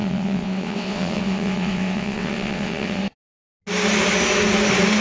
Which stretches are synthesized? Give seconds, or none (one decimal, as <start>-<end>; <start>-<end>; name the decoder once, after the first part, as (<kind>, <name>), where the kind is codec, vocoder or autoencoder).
0.0-3.0 (vocoder, WaveNeXt)